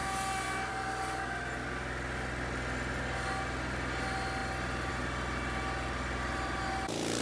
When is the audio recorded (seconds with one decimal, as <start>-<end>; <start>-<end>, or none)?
0.0-7.2